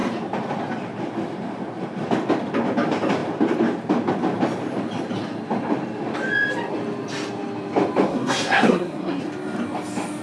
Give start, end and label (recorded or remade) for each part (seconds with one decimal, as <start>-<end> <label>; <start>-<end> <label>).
0.0-8.1 recorded; 8.1-9.2 remade; 9.2-10.2 recorded